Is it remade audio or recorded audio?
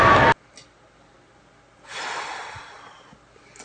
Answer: recorded